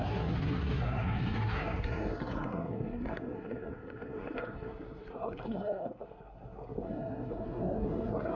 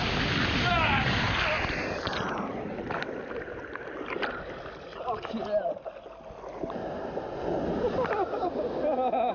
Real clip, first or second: second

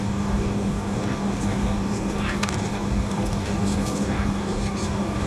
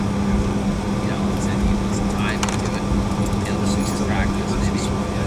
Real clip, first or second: second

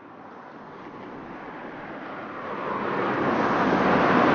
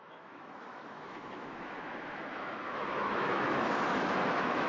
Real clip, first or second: first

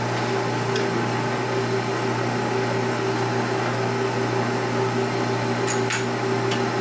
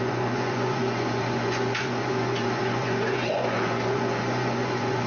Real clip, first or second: first